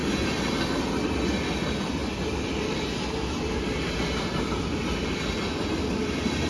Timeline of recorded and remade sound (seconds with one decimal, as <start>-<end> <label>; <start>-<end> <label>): 0.0-6.5 recorded